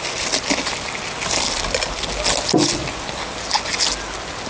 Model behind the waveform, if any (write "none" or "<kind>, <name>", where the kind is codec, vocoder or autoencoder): none